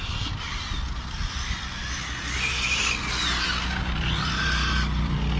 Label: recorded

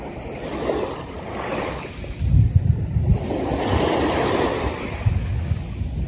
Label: remade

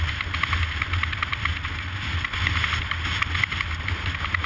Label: recorded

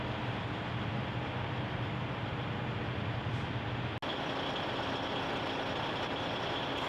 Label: recorded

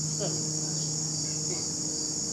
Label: recorded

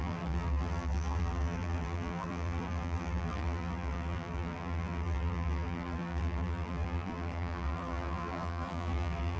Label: remade